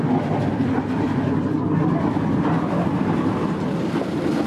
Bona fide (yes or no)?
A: no